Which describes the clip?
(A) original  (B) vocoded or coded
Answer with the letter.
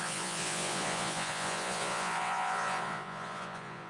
B